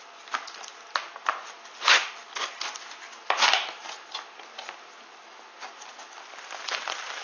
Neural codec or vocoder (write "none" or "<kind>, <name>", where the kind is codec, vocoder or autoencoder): none